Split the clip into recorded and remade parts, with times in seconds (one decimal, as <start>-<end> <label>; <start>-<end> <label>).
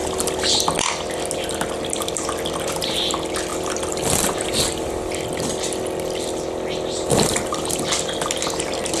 0.0-0.8 remade; 0.8-3.5 recorded; 3.5-7.3 remade; 7.3-9.0 recorded